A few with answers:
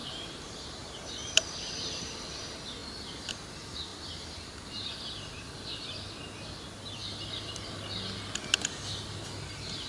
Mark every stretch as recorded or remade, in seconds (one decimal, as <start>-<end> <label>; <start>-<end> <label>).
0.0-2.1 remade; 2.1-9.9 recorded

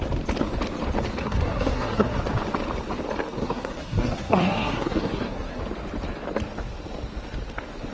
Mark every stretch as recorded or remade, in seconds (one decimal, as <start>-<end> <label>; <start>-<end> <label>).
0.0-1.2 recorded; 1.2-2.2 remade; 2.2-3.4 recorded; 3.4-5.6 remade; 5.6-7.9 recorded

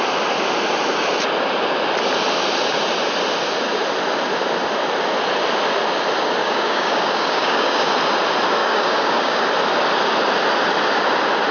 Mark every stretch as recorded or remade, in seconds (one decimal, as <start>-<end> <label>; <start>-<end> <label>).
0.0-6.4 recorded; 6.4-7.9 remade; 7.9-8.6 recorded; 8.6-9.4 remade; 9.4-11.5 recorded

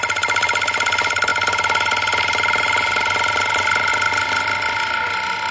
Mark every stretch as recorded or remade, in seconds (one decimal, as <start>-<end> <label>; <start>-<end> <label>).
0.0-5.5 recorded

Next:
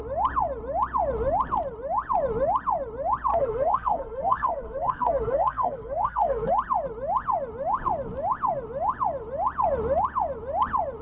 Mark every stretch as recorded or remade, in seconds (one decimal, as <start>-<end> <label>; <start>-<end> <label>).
0.0-3.3 recorded; 3.3-6.5 remade; 6.5-11.0 recorded

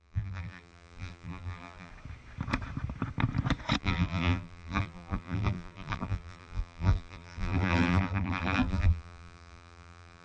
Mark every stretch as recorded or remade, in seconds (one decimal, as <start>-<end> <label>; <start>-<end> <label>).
0.0-1.9 remade; 1.9-3.8 recorded; 3.8-10.2 remade

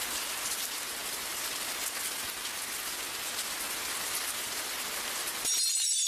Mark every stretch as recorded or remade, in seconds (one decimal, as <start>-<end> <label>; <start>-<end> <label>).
0.0-6.1 recorded

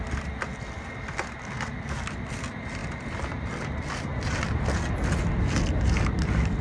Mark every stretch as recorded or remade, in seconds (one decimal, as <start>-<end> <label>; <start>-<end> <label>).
0.0-0.5 recorded; 0.5-2.2 remade; 2.2-6.6 recorded